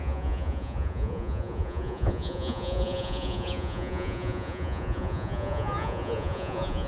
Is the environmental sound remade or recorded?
remade